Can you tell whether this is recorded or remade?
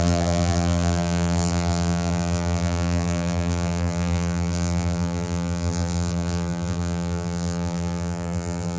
remade